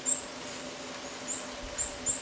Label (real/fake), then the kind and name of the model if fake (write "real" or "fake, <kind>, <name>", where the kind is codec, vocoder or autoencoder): real